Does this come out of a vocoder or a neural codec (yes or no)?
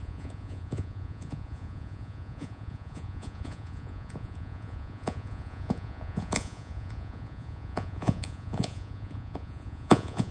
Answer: yes